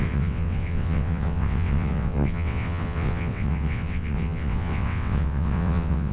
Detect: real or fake fake